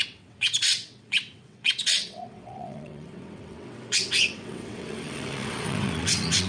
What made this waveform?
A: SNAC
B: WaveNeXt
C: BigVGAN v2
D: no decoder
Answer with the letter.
B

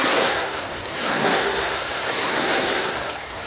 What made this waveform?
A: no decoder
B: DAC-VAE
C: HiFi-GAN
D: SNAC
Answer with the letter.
D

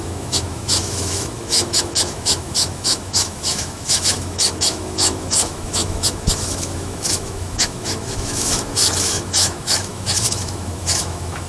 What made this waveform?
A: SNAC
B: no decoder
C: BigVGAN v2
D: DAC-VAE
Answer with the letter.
D